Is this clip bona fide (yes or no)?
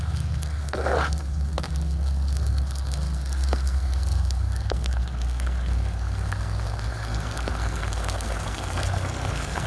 no